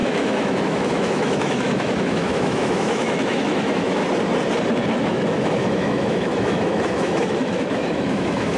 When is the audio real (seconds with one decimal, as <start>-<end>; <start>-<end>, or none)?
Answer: 4.0-5.0